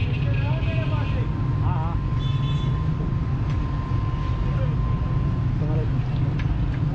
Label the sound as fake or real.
real